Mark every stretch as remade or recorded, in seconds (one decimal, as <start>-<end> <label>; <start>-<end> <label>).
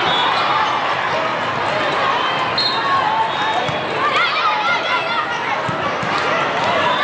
0.0-7.0 recorded